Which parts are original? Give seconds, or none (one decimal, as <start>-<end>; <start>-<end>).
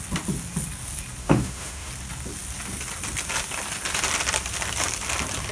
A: 0.0-1.2; 1.9-5.5